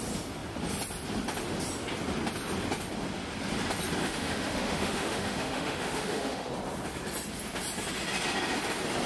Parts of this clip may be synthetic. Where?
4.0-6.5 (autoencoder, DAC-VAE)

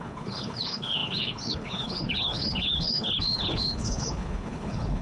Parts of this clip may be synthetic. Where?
0.0-5.0 (codec, HILCodec)

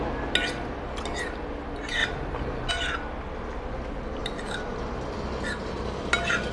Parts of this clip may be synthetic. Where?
2.0-2.7 (vocoder, BigVGAN v2)